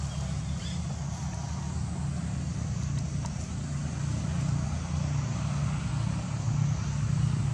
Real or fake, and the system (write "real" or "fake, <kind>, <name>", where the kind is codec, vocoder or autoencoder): real